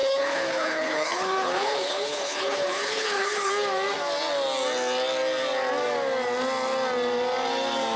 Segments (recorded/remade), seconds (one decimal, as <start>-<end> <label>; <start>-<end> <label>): 0.0-3.5 remade; 3.5-8.0 recorded